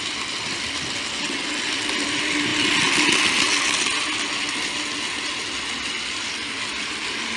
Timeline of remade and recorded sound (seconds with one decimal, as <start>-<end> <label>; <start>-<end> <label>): 0.0-7.4 recorded